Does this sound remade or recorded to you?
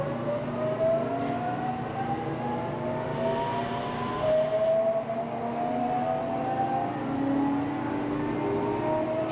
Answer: recorded